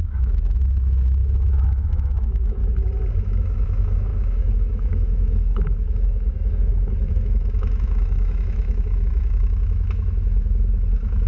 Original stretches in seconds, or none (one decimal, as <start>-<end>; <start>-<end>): 2.6-3.2